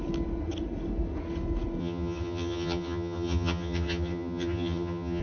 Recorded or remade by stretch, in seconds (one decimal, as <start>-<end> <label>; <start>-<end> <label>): 0.0-1.8 recorded; 1.8-5.2 remade